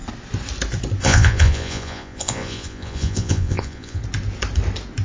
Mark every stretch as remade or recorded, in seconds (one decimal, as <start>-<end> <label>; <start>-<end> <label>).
0.0-1.0 recorded; 1.0-4.0 remade; 4.0-5.0 recorded